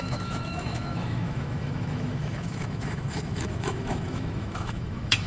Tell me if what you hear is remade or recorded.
remade